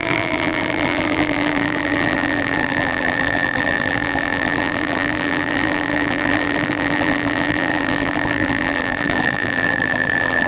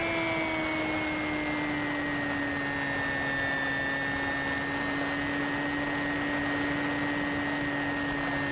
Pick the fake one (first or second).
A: first